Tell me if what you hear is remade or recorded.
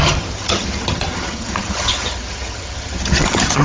remade